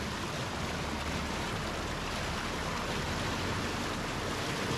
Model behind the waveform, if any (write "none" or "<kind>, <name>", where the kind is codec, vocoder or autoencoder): none